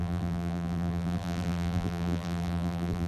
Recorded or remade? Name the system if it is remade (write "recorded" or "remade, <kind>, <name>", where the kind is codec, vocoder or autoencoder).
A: remade, vocoder, BigVGAN v2